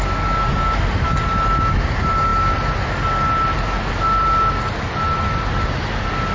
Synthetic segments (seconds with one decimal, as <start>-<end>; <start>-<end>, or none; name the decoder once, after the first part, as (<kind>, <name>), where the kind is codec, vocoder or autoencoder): none